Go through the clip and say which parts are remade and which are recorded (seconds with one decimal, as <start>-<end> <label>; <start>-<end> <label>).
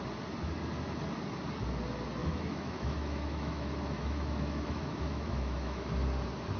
0.0-2.2 recorded; 2.2-5.9 remade; 5.9-6.6 recorded